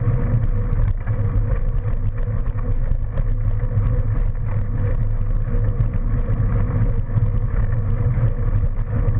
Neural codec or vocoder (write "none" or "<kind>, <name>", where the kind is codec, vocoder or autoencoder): none